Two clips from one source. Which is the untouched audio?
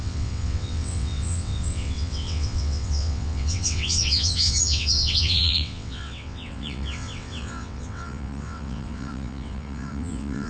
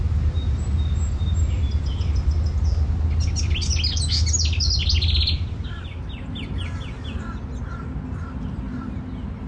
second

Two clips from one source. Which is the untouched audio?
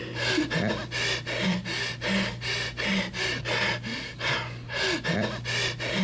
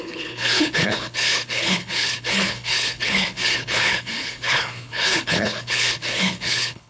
first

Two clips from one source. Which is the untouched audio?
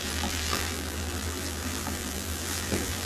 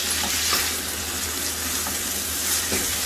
second